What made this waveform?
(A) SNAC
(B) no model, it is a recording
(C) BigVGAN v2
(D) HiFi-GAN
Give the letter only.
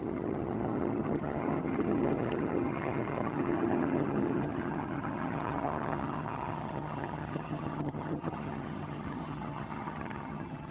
D